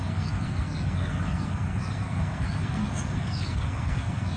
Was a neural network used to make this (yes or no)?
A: yes